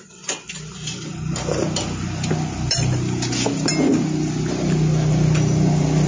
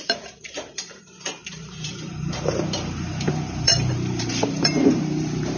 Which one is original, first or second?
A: first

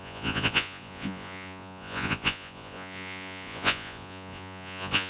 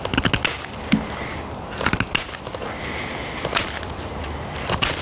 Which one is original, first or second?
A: second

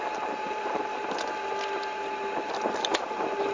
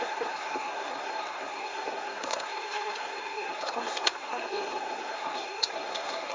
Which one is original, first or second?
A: first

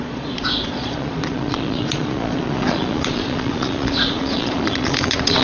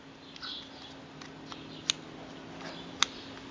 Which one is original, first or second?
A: second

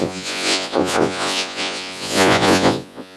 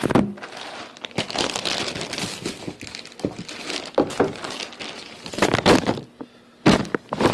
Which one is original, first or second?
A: second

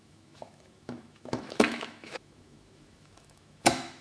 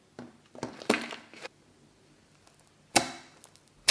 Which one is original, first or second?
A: second